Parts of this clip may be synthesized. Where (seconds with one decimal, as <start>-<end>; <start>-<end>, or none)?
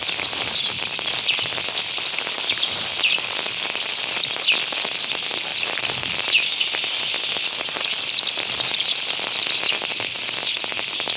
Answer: none